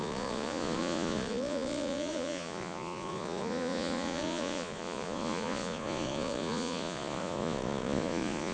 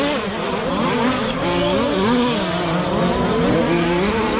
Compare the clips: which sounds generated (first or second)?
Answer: first